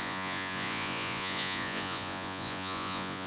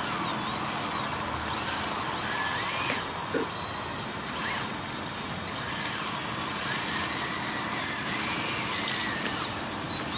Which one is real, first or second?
second